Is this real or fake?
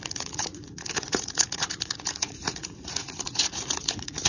fake